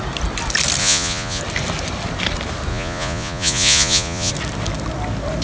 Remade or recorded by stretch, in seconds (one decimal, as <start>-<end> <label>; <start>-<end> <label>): 0.0-0.8 recorded; 0.8-1.4 remade; 1.4-2.7 recorded; 2.7-4.3 remade; 4.3-5.4 recorded